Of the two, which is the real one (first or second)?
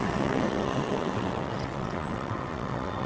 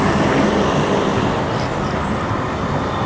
second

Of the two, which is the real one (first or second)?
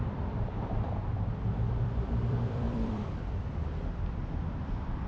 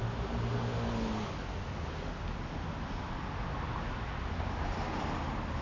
second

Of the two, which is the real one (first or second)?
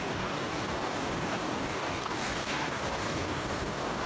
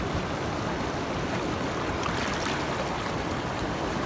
second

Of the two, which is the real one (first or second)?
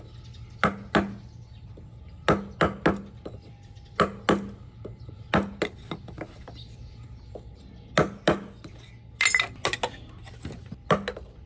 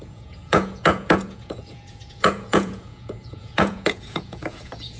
first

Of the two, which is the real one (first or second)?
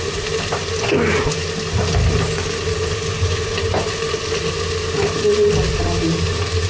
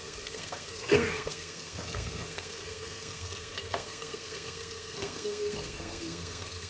first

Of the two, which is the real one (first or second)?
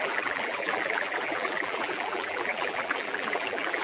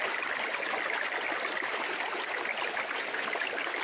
second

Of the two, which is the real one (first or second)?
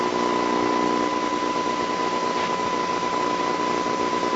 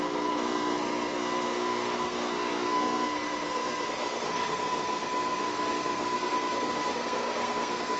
first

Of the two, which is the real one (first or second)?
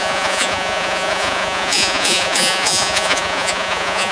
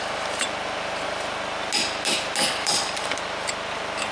second